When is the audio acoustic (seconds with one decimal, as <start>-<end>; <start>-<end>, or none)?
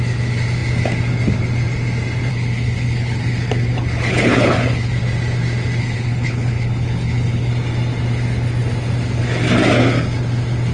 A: 0.0-2.3; 5.0-5.8; 7.5-10.7